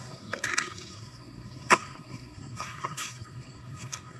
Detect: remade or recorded remade